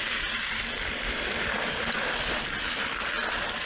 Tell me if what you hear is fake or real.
real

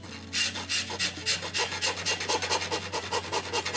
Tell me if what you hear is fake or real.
real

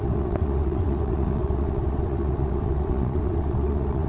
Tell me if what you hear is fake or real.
fake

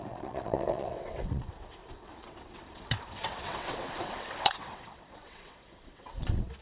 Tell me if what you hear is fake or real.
fake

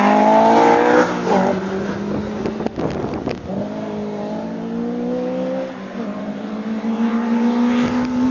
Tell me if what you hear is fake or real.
real